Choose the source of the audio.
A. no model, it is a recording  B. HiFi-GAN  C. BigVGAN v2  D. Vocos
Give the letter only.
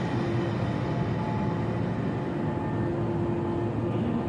A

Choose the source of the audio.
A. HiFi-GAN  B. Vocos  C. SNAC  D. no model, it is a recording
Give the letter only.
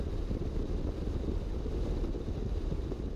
D